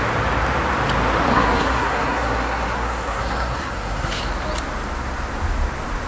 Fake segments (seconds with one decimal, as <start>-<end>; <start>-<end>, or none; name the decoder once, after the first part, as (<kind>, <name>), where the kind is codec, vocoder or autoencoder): 1.3-4.2 (codec, SNAC)